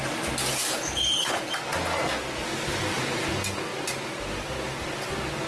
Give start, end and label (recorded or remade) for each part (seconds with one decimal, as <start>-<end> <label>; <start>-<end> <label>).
0.0-0.7 recorded; 0.7-1.5 remade; 1.5-5.5 recorded